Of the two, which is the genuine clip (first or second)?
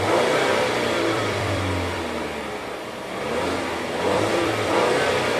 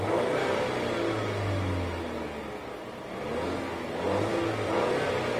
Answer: second